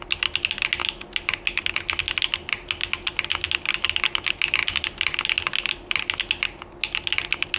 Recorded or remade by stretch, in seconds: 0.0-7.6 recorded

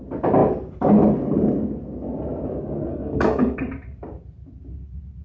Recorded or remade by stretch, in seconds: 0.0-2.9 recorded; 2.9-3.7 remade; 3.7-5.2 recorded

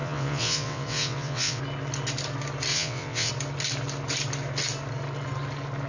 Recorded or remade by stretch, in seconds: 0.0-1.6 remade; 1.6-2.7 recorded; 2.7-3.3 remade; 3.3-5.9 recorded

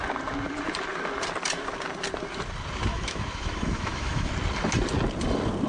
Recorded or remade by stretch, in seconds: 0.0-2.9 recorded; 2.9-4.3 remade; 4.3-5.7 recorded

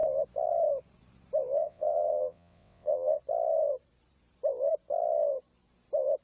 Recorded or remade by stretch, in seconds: 0.0-1.6 recorded; 1.6-3.2 remade; 3.2-6.2 recorded